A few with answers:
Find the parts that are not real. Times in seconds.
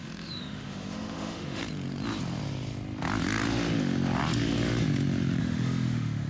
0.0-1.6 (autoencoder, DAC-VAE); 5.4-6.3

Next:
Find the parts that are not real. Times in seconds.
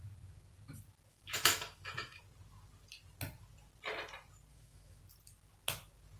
1.1-2.2 (autoencoder, DAC-VAE); 4.5-5.0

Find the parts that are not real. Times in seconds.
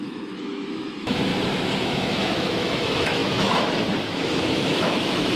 0.0-1.3 (autoencoder, DAC-VAE); 1.8-5.4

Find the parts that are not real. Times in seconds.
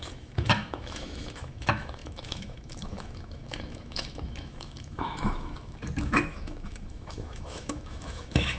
0.0-8.6 (autoencoder, DAC-VAE)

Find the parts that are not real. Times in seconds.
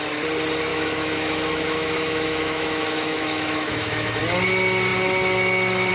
0.7-4.2 (autoencoder, DAC-VAE)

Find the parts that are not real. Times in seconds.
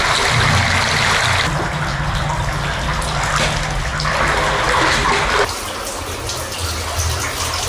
none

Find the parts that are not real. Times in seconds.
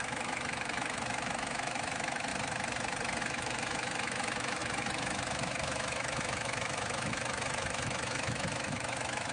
0.0-2.3 (autoencoder, DAC-VAE); 3.2-9.3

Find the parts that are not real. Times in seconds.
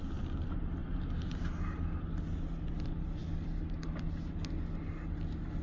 none